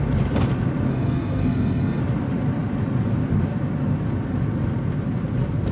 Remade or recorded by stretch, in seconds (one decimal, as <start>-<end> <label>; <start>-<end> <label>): 0.0-0.9 recorded; 0.9-2.0 remade; 2.0-5.7 recorded